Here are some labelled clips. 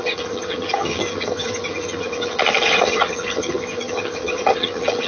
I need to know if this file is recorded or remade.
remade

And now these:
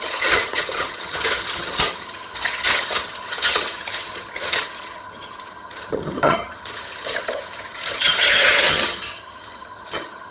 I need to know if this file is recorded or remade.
remade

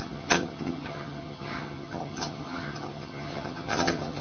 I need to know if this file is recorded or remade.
remade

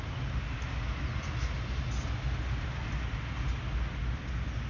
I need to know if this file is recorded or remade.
recorded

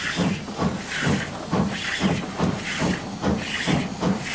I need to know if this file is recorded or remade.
recorded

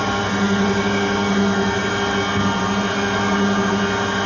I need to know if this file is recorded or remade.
recorded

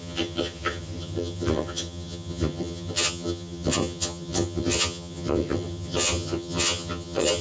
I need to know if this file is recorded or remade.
remade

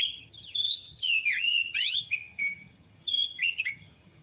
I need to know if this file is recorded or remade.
remade